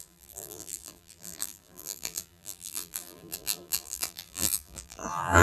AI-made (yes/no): yes